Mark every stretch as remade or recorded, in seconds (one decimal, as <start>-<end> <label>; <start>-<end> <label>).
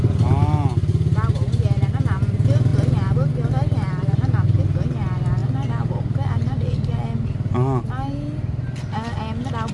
0.0-9.7 recorded